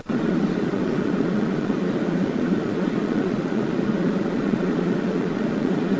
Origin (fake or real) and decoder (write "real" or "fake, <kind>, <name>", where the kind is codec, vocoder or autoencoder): fake, vocoder, Vocos